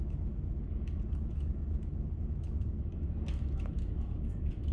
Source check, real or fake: fake